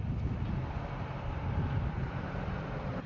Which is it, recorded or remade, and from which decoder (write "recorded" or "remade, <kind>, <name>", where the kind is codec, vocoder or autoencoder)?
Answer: recorded